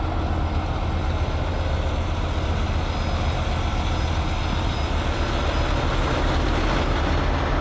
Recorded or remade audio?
recorded